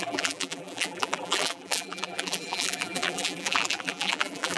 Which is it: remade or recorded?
remade